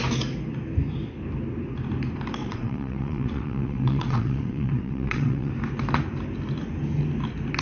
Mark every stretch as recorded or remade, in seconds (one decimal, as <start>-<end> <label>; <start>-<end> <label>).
0.0-2.4 recorded; 2.4-5.5 remade; 5.5-7.6 recorded